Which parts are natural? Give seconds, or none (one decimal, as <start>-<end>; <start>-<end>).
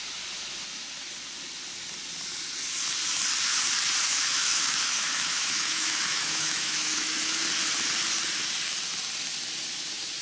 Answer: 0.0-4.1; 7.4-10.2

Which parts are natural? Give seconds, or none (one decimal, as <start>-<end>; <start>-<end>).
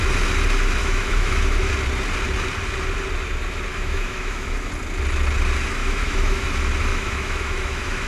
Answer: 0.0-0.8; 1.7-3.7; 4.7-5.8; 6.5-6.9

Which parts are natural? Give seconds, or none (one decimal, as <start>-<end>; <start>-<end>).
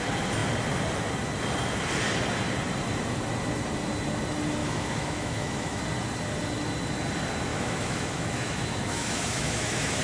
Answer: 0.0-4.6; 5.8-7.5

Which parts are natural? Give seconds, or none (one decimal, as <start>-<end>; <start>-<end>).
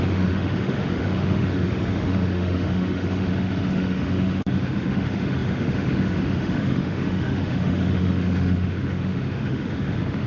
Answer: none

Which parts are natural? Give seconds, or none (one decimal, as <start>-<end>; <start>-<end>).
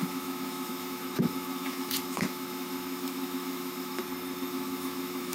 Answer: 4.0-4.5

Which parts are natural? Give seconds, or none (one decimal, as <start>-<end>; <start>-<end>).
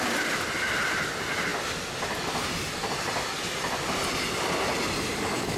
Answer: 0.0-5.6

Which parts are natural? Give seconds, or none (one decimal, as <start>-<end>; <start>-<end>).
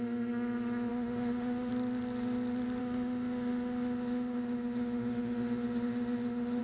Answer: 0.0-0.9; 1.7-2.8